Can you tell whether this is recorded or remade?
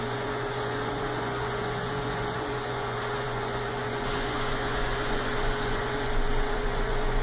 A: remade